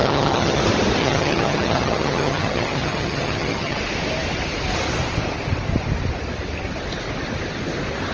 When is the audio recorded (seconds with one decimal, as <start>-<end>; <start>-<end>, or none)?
0.6-1.0; 3.8-8.1

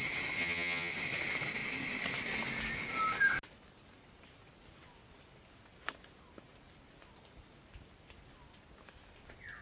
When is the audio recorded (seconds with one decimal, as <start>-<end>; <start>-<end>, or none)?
0.0-0.4; 0.9-9.6

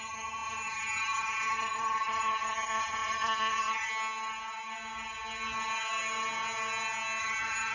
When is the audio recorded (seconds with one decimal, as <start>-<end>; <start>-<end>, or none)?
3.9-7.2